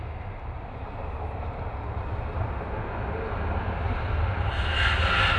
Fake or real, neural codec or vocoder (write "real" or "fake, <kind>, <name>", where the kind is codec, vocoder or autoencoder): real